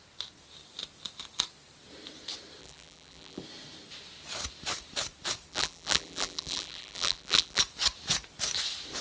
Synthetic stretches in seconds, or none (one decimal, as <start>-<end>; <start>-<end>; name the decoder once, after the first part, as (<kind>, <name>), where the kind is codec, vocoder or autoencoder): 2.6-3.4 (vocoder, BigVGAN v2); 5.5-7.6